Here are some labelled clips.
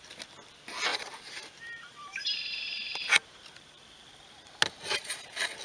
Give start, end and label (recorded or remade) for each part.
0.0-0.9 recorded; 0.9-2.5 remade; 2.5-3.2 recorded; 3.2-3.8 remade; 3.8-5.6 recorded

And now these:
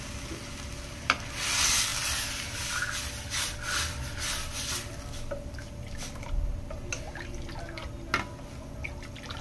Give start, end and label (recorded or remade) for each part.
0.0-9.4 recorded

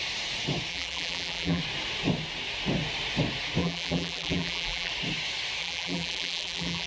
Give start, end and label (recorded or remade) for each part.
0.0-0.7 recorded; 0.7-1.6 remade; 1.6-3.6 recorded; 3.6-4.9 remade; 4.9-5.6 recorded; 5.6-6.9 remade

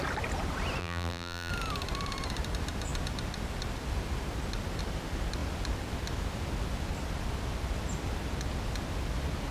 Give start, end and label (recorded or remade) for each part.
0.0-0.8 recorded; 0.8-1.5 remade; 1.5-9.5 recorded

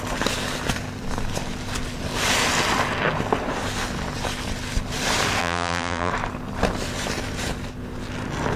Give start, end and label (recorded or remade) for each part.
0.0-5.4 recorded; 5.4-6.1 remade; 6.1-8.6 recorded